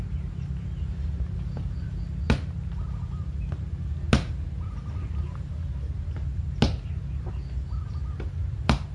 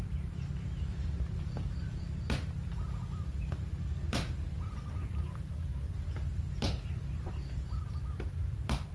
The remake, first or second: second